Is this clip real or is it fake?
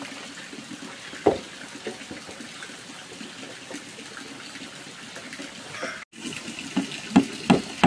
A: real